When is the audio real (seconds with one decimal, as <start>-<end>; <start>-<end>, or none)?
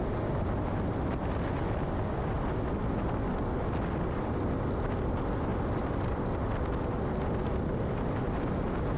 0.0-9.0